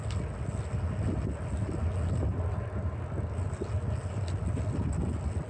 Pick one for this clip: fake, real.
real